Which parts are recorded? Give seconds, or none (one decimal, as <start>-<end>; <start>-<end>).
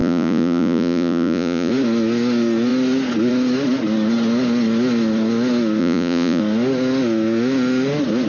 1.7-5.8; 6.4-8.3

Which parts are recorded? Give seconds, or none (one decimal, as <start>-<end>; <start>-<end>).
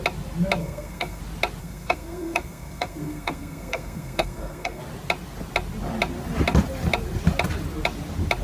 0.0-0.6; 1.2-1.6; 4.8-8.4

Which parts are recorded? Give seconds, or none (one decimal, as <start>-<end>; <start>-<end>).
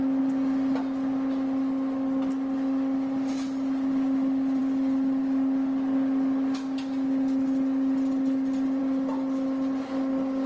0.0-10.5